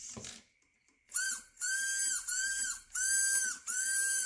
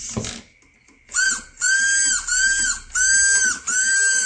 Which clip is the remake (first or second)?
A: first